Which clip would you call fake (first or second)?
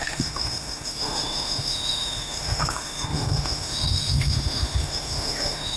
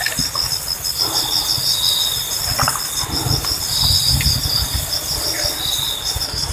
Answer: first